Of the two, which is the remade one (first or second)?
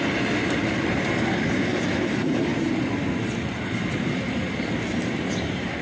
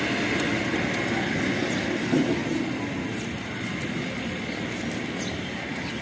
first